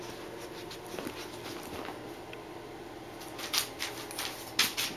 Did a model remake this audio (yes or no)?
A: no